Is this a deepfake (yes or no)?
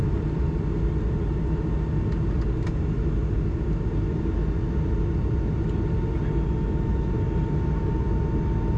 no